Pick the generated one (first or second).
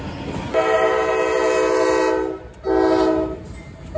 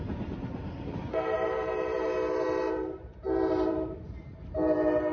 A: second